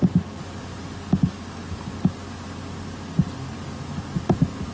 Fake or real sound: real